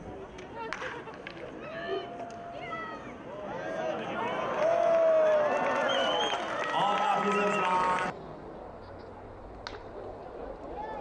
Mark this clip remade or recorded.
recorded